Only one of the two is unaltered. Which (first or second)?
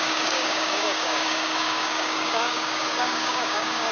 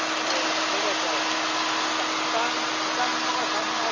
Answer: second